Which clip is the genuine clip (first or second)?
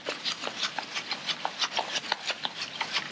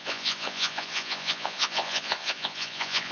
first